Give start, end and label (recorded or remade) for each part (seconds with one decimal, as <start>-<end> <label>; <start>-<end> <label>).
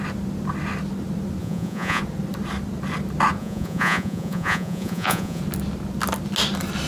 0.0-1.4 recorded; 1.4-2.0 remade; 2.0-3.4 recorded; 3.4-5.4 remade; 5.4-6.9 recorded